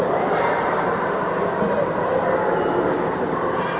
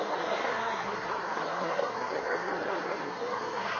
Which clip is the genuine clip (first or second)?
first